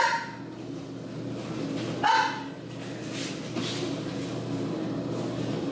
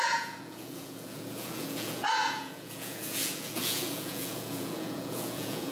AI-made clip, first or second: second